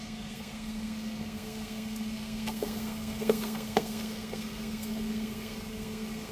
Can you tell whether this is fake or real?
fake